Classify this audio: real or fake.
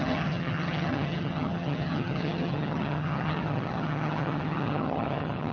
fake